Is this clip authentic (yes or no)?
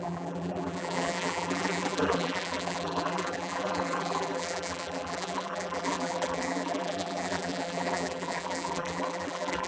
no